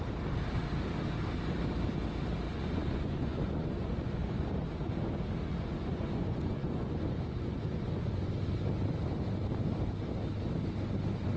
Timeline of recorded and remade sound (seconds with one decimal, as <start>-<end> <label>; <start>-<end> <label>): 0.0-2.5 recorded; 2.5-4.5 remade; 4.5-5.5 recorded; 5.5-8.3 remade; 8.3-11.4 recorded